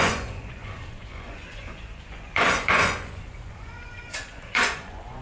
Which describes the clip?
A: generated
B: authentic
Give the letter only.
A